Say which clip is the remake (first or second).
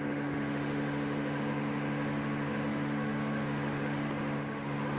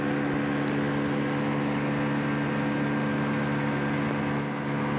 first